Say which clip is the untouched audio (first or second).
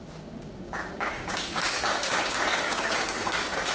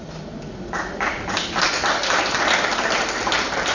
second